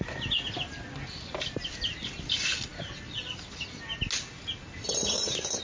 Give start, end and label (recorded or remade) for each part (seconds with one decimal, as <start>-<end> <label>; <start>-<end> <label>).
0.0-5.6 recorded